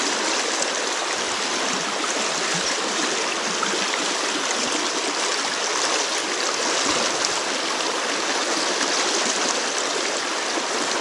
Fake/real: real